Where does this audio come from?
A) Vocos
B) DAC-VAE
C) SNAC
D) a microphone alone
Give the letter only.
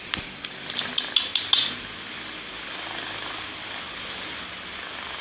D